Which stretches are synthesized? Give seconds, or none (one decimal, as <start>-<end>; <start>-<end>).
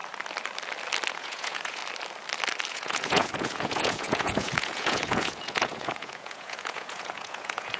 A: 1.1-1.8; 2.7-7.8